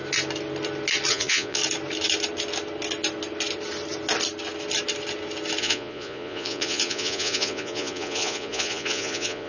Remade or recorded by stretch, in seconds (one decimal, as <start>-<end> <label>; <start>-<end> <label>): 0.0-1.1 recorded; 1.1-1.6 remade; 1.6-5.6 recorded; 5.6-9.5 remade